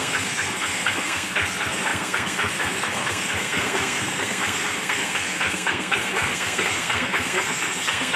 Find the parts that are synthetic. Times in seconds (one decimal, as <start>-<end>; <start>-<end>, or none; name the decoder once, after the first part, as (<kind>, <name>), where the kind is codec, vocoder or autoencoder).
0.0-8.2 (codec, SNAC)